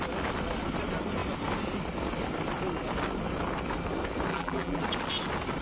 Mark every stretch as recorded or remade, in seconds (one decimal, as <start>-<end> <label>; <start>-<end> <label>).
0.0-4.3 recorded; 4.3-4.8 remade; 4.8-5.6 recorded